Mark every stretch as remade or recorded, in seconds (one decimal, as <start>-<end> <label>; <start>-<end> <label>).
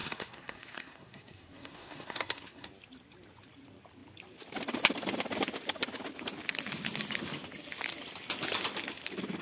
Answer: 0.0-2.7 remade; 2.7-9.4 recorded